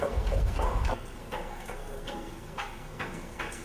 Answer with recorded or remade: remade